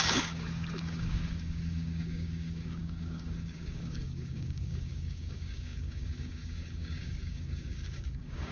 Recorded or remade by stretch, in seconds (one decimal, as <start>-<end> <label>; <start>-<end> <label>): 0.0-8.5 remade